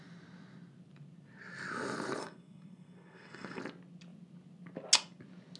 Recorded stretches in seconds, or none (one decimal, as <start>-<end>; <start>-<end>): 0.0-2.2; 3.6-5.6